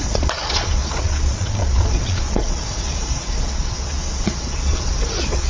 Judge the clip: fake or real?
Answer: fake